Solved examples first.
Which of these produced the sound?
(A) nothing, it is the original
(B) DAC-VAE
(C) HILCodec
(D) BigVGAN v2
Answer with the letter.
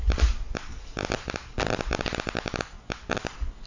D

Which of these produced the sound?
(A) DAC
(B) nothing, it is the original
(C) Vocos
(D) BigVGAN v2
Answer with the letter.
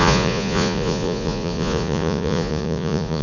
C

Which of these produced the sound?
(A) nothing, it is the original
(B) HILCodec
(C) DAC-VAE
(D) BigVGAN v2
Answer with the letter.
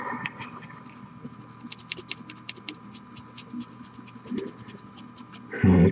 A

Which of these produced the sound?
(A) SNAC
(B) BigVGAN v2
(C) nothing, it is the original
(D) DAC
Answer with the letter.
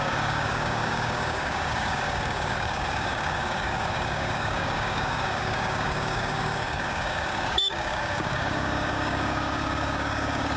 D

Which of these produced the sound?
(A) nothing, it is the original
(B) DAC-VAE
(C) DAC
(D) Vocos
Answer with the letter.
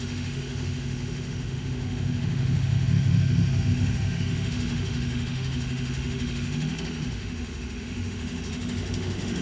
B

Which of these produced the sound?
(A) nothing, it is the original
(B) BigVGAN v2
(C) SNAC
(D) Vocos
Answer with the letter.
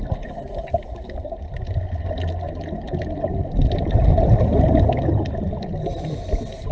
A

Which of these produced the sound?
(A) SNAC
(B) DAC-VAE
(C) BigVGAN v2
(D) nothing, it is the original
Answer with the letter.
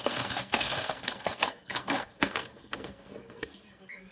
A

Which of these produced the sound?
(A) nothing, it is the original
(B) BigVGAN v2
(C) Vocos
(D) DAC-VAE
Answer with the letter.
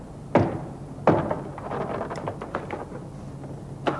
A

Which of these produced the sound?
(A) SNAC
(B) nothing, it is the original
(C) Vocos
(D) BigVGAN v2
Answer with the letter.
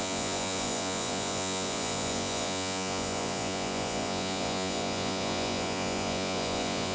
C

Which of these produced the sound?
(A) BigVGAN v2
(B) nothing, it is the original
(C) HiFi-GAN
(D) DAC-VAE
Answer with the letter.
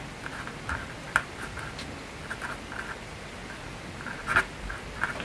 B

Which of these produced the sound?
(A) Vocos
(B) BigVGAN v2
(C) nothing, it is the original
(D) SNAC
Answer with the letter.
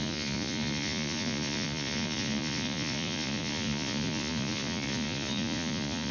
A